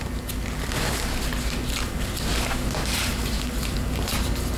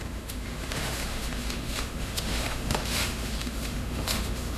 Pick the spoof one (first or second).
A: second